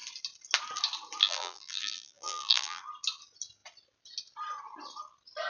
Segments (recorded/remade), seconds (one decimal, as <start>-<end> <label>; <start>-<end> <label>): 0.0-1.2 recorded; 1.2-2.8 remade; 2.8-5.5 recorded